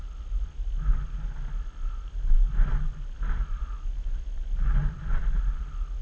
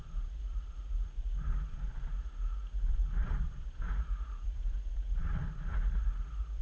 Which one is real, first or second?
first